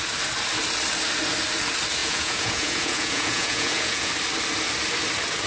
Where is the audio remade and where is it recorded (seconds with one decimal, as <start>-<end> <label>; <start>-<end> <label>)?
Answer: 0.0-2.0 recorded; 2.0-4.1 remade; 4.1-5.5 recorded

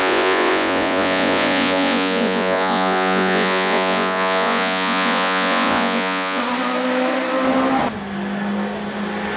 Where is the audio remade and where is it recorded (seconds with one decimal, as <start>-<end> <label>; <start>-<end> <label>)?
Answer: 0.0-6.4 remade; 6.4-9.4 recorded

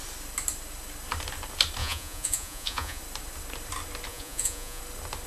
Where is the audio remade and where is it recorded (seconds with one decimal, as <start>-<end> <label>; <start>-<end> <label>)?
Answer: 0.0-1.8 recorded; 1.8-3.0 remade; 3.0-4.1 recorded; 4.1-4.8 remade; 4.8-5.3 recorded

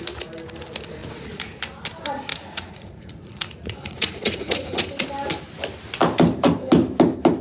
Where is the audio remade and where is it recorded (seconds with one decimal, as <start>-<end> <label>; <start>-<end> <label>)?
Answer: 0.0-1.0 recorded; 1.0-1.6 remade; 1.6-2.3 recorded; 2.3-4.9 remade; 4.9-7.4 recorded

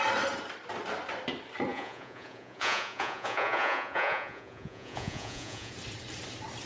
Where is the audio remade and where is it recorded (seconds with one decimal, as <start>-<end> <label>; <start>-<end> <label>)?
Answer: 0.0-1.7 recorded; 1.7-5.7 remade; 5.7-6.7 recorded

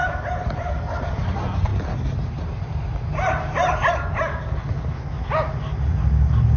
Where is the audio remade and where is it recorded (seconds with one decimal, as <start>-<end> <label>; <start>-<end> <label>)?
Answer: 0.0-6.6 recorded

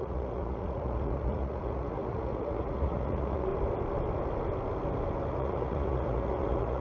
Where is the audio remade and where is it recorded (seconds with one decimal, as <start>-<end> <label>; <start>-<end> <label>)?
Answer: 0.0-3.5 remade; 3.5-5.3 recorded; 5.3-6.8 remade